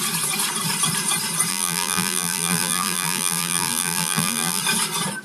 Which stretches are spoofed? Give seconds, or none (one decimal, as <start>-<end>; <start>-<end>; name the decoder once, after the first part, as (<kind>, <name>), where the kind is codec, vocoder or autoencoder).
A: 1.5-4.6 (vocoder, BigVGAN v2)